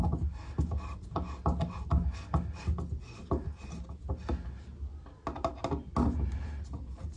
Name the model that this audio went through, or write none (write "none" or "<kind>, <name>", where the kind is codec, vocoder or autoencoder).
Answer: none